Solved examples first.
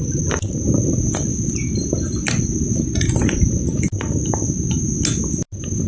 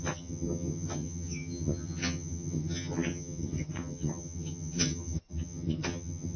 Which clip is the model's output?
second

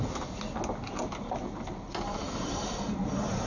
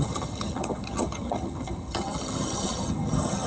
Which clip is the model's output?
second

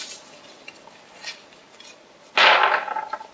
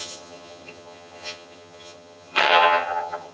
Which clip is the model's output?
second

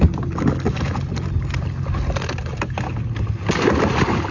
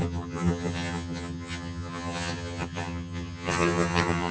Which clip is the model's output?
second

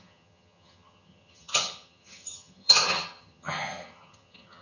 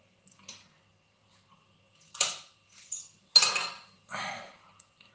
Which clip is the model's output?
first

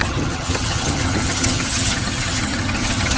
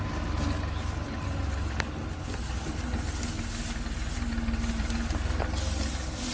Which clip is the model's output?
first